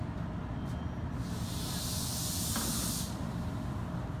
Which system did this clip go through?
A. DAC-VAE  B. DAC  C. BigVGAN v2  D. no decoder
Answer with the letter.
D